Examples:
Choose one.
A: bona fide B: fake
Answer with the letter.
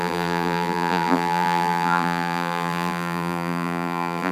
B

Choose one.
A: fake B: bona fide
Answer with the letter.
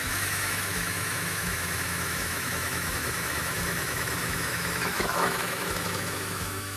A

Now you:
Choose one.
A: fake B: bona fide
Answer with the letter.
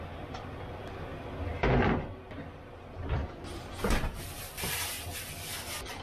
B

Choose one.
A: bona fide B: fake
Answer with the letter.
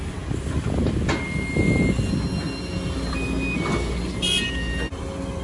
A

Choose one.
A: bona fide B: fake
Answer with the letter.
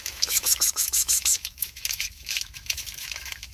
B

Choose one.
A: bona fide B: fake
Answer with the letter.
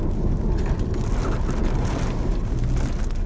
A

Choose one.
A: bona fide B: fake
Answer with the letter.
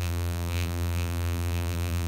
B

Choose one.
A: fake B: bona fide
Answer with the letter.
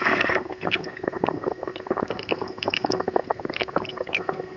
A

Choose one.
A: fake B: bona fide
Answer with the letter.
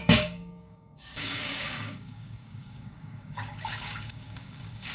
A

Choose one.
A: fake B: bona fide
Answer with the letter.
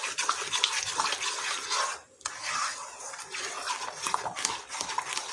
B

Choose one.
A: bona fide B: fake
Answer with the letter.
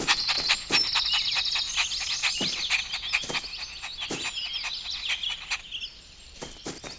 A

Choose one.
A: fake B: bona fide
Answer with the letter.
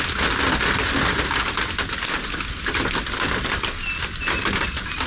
B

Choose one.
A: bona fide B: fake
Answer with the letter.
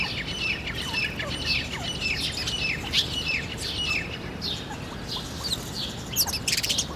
A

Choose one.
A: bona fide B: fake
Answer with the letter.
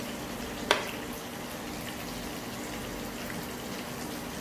A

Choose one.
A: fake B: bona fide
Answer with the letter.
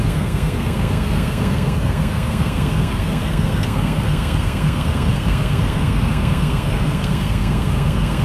A